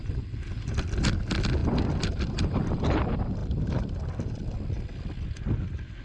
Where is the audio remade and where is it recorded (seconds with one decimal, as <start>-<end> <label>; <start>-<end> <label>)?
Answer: 0.0-3.4 remade; 3.4-5.6 recorded; 5.6-6.0 remade